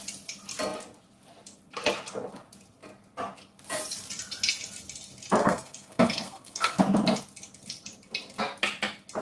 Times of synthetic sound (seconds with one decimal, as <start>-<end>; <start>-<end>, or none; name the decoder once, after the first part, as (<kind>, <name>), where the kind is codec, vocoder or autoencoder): 5.4-6.8 (codec, SNAC)